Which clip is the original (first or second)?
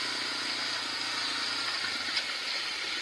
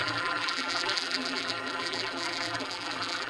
first